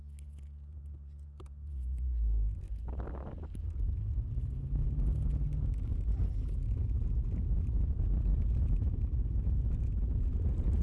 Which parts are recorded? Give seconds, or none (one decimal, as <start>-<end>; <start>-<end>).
0.0-0.7; 3.0-5.9